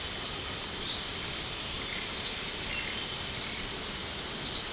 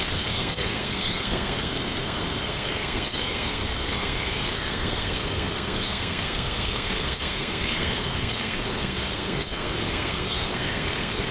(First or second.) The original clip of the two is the first